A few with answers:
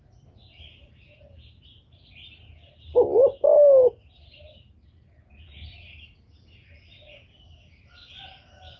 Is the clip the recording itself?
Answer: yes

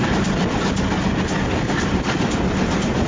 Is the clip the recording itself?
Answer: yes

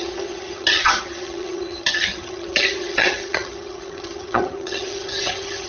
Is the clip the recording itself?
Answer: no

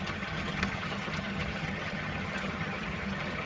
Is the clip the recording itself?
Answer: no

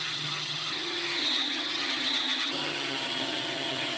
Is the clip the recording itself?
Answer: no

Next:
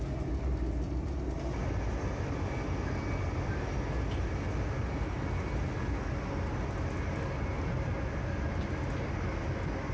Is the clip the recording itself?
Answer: yes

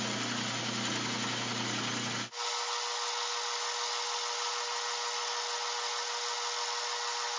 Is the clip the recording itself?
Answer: yes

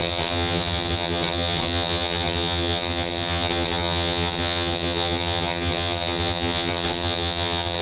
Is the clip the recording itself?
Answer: no